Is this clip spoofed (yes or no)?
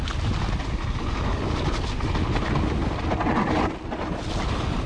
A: no